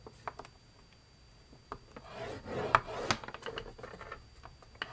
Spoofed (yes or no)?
no